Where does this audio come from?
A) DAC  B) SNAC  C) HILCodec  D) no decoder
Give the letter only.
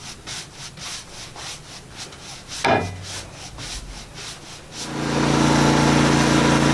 D